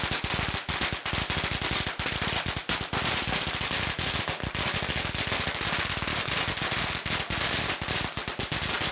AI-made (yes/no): no